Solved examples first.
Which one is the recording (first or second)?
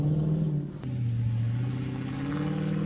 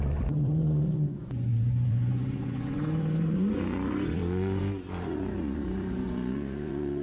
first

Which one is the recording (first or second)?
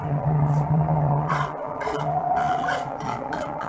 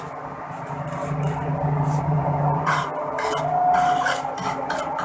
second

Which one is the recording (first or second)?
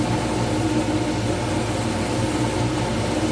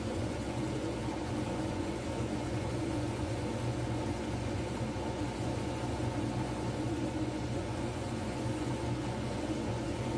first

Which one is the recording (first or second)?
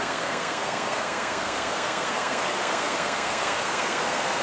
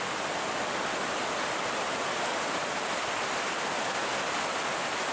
second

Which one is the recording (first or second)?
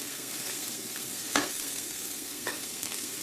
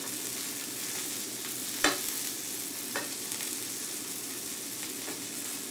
second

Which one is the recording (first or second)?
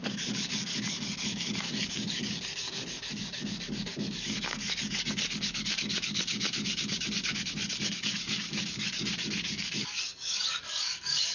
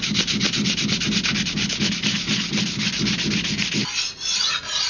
second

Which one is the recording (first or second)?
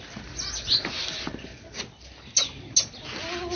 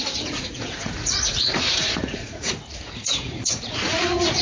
first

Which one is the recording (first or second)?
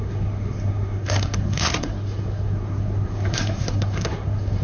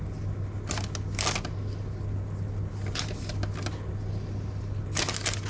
second